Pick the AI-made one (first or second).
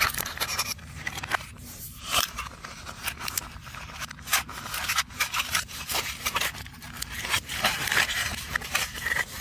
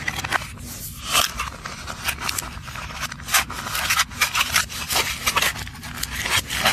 first